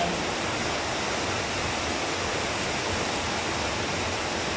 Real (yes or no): yes